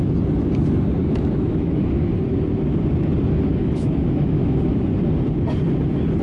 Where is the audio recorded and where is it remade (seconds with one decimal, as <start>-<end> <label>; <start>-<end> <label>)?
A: 0.0-1.0 recorded; 1.0-1.8 remade; 1.8-3.5 recorded; 3.5-4.8 remade; 4.8-6.2 recorded